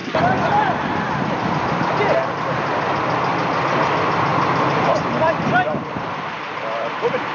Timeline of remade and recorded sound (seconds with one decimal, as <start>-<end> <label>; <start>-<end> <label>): 0.0-2.0 remade; 2.0-4.3 recorded; 4.3-7.3 remade